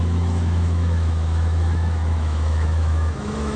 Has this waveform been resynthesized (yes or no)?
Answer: yes